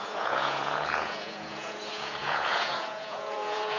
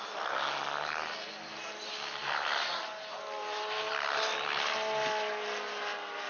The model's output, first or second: first